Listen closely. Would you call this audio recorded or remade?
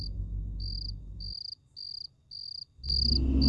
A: recorded